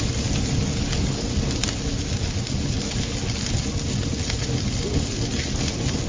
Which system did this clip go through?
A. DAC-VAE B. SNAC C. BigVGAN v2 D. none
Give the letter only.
D